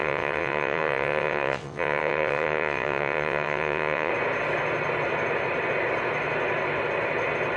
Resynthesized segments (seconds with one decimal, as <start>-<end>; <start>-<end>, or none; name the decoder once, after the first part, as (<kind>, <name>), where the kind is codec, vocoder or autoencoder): 0.0-4.1 (vocoder, WaveNeXt)